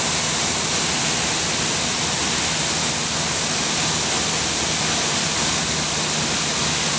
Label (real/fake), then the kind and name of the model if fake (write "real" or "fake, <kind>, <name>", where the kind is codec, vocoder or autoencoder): real